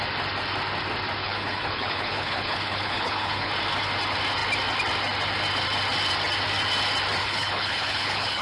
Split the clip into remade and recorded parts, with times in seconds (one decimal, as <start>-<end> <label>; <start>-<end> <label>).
0.0-1.2 recorded; 1.2-3.5 remade; 3.5-7.2 recorded; 7.2-8.4 remade